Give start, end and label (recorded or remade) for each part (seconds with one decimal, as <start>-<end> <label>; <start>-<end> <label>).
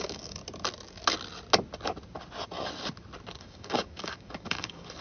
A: 0.0-0.4 remade; 0.4-3.4 recorded; 3.4-5.0 remade